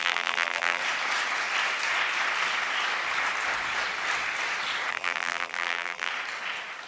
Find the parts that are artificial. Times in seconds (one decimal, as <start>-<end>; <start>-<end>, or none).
0.0-0.8; 4.9-6.1